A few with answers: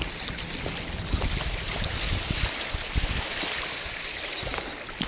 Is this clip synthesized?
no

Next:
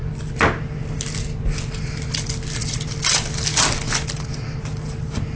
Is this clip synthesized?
no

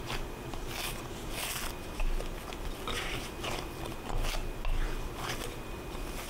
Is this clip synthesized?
no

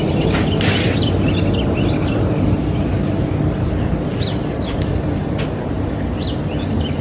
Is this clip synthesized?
no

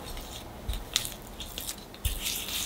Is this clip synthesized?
no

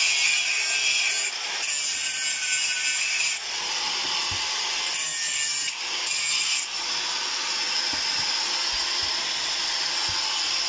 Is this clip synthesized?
no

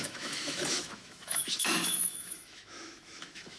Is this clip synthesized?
yes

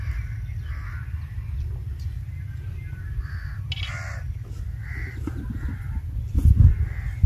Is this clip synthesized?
no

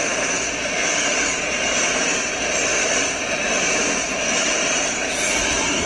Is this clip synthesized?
no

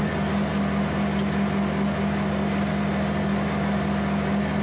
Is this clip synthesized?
no